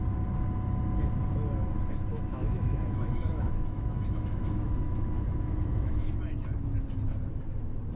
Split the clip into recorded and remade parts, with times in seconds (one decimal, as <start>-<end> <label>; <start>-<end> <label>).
0.0-2.1 recorded; 2.1-6.1 remade; 6.1-8.0 recorded